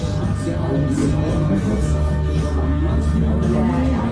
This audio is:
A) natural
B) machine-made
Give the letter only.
A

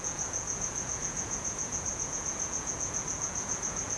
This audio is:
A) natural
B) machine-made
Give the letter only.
B